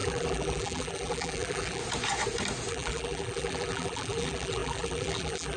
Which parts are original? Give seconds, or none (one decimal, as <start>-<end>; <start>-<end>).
1.8-2.7